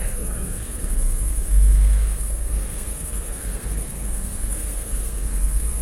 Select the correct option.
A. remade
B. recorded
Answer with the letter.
A